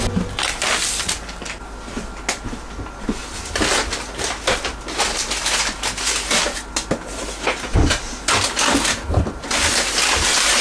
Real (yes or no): yes